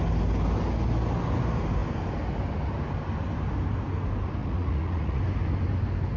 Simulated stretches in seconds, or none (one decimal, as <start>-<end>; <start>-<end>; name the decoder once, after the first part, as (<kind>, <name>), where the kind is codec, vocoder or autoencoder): 4.4-5.2 (vocoder, Vocos)